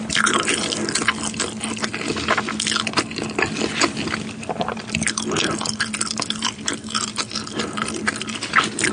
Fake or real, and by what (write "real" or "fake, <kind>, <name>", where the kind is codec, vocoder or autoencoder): real